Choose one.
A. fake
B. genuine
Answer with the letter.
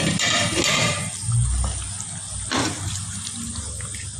B